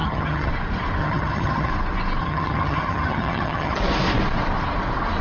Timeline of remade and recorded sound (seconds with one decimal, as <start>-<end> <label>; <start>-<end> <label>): 0.0-0.5 remade; 0.5-1.0 recorded; 1.0-1.7 remade; 1.7-2.2 recorded; 2.2-3.8 remade; 3.8-5.2 recorded